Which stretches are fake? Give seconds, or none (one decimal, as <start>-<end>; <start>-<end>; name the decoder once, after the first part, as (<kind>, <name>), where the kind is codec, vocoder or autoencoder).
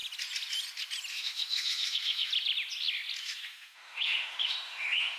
1.1-2.3 (autoencoder, DAC-VAE); 3.2-5.2